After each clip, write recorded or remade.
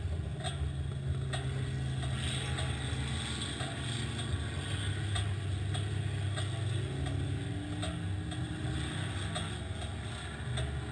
recorded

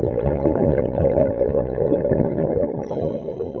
remade